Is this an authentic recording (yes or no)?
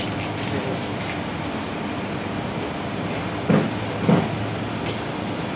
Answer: yes